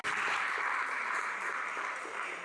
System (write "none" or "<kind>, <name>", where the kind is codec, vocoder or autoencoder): none